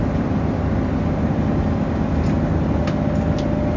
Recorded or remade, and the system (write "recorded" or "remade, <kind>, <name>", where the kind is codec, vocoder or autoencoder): recorded